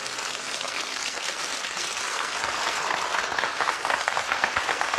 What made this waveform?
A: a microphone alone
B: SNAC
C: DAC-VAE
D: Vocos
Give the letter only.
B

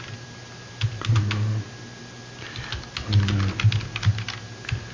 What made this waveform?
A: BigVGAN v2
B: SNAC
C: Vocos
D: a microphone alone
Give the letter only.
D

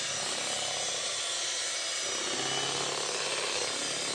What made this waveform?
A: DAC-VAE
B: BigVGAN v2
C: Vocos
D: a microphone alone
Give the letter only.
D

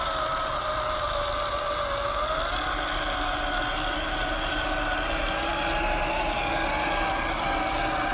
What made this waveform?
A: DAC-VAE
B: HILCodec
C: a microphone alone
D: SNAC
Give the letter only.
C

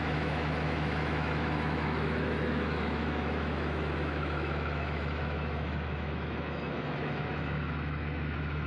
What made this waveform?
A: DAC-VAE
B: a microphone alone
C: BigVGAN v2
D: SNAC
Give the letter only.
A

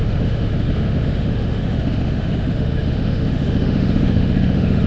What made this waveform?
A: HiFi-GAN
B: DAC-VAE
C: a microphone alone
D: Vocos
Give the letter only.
B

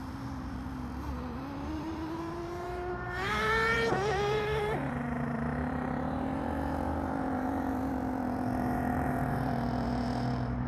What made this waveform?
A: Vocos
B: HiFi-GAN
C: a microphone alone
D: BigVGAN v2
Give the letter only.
D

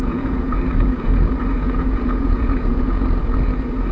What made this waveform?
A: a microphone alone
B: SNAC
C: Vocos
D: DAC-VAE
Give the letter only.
C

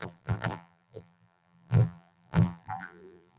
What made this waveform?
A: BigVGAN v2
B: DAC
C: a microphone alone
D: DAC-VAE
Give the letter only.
A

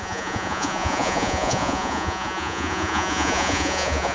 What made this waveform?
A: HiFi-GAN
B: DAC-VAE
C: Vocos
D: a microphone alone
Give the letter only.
C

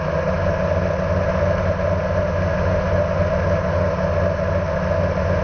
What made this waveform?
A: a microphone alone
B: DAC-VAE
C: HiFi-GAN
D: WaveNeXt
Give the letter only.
A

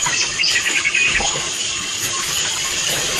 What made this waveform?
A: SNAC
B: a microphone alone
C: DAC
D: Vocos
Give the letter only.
C